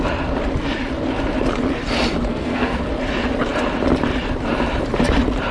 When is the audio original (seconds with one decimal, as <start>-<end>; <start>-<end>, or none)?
0.0-2.3; 2.8-5.5